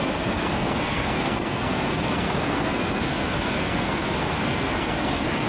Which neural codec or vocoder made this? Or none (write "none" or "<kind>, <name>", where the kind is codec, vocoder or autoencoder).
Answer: codec, SNAC